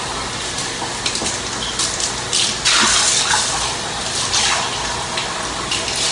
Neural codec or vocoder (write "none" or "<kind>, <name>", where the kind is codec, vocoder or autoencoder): none